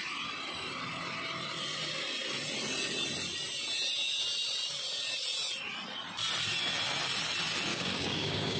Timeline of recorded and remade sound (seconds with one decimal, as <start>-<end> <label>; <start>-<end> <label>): 0.0-7.7 recorded; 7.7-8.6 remade